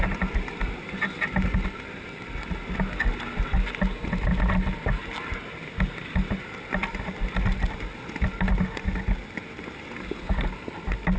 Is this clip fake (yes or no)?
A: no